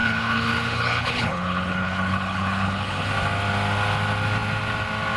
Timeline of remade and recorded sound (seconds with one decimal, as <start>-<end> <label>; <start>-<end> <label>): 0.0-3.1 remade; 3.1-5.2 recorded